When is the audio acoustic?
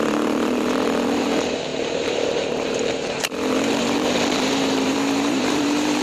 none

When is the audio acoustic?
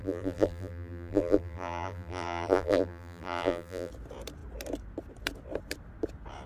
3.9-6.5